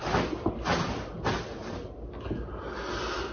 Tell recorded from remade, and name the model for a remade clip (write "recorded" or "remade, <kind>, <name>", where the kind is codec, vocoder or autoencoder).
recorded